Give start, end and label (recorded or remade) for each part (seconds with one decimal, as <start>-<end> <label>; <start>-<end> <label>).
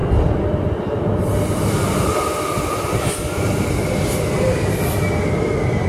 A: 0.0-0.8 recorded; 0.8-2.1 remade; 2.1-5.9 recorded